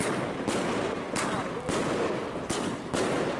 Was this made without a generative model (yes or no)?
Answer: yes